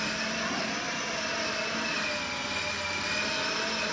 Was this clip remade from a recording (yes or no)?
no